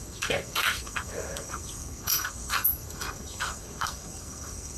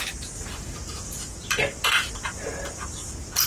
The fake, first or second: first